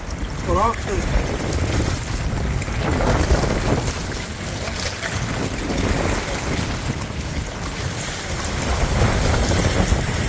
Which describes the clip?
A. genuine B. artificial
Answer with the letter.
A